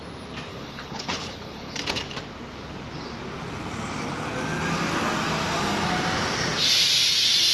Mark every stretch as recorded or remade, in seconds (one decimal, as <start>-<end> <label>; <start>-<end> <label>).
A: 0.0-0.5 recorded; 0.5-1.8 remade; 1.8-7.5 recorded